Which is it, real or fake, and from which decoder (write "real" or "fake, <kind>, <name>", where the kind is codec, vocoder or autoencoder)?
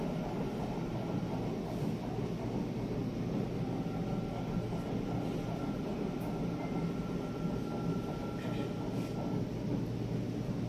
real